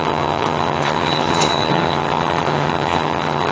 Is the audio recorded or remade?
remade